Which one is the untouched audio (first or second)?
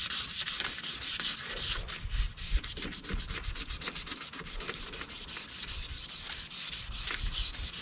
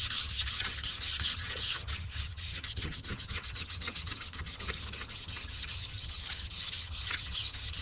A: first